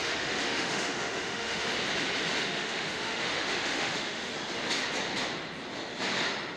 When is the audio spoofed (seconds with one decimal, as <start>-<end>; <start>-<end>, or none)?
0.0-1.7; 2.4-4.3